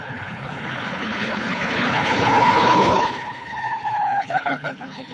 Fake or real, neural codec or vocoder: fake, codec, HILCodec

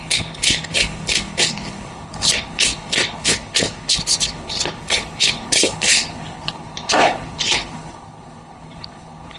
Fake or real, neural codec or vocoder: fake, codec, HILCodec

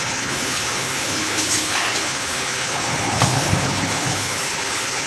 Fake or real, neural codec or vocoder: fake, codec, HILCodec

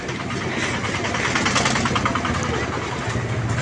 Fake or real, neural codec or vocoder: real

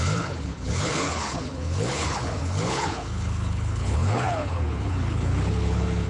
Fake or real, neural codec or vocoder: fake, codec, HILCodec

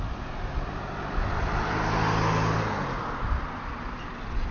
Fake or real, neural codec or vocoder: real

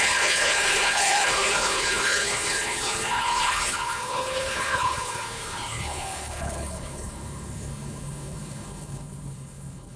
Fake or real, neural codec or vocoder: fake, codec, HILCodec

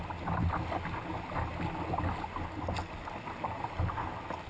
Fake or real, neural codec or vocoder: real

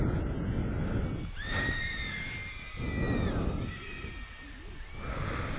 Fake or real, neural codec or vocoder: real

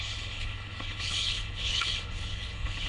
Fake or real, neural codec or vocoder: fake, codec, HILCodec